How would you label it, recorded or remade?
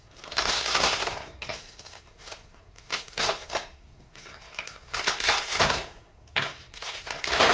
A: remade